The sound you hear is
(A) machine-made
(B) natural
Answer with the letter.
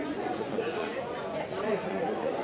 A